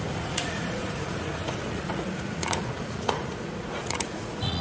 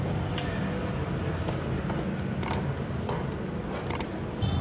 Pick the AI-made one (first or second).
first